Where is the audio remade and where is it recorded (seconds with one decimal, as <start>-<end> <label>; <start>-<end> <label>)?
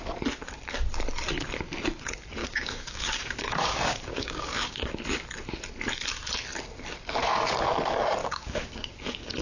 0.0-2.4 recorded; 2.4-5.0 remade; 5.0-8.2 recorded; 8.2-9.4 remade